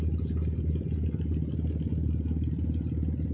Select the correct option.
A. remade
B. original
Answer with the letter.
B